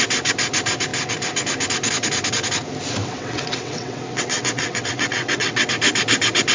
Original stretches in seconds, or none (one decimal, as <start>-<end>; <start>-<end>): 0.0-3.0; 5.7-6.5